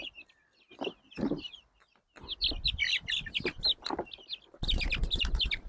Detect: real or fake real